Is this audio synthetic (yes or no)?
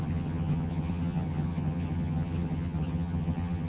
yes